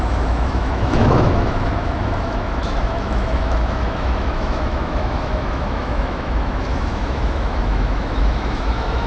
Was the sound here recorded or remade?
remade